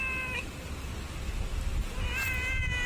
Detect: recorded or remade recorded